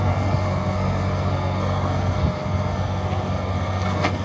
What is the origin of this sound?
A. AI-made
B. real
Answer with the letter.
A